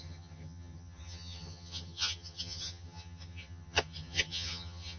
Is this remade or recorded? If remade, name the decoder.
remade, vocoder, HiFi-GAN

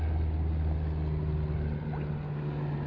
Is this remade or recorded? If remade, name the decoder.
recorded